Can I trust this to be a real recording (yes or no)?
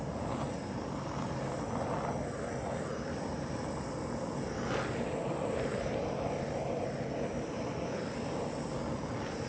yes